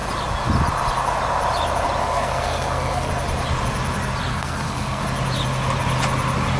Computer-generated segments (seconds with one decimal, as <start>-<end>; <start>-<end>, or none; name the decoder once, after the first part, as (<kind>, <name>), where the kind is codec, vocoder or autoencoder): 2.0-3.1 (codec, SNAC); 4.3-5.0